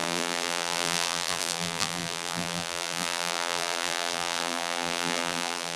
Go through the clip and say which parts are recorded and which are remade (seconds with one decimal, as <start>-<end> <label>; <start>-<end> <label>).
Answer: 0.0-5.8 remade